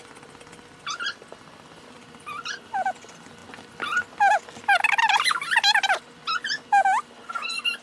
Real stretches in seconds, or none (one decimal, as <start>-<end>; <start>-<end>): 0.0-7.8